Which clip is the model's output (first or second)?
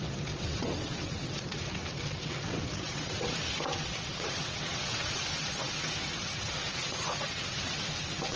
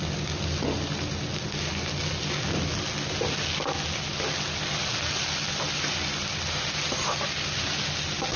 first